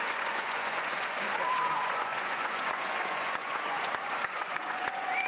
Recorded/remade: remade